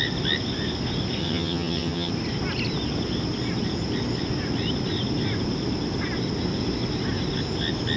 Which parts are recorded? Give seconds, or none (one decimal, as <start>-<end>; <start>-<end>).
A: 0.0-1.2; 2.1-8.0